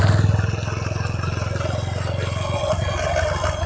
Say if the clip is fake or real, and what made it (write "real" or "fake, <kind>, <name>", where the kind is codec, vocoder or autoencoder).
real